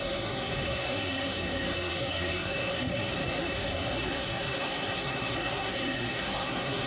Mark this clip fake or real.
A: fake